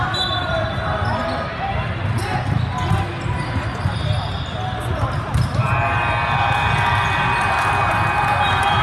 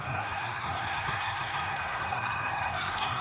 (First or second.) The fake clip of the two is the second